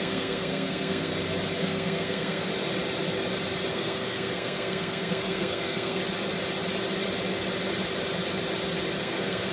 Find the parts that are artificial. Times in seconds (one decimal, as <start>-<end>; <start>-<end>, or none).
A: 0.0-1.1; 1.6-2.5; 3.7-6.0; 9.0-9.5